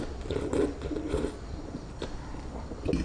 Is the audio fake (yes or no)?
no